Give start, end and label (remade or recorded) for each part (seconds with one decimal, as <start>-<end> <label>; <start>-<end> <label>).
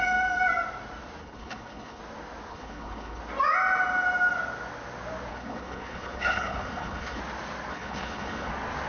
0.0-1.2 recorded; 1.2-2.0 remade; 2.0-2.5 recorded; 2.5-3.2 remade; 3.2-5.3 recorded; 5.3-7.2 remade; 7.2-7.7 recorded; 7.7-8.5 remade; 8.5-8.9 recorded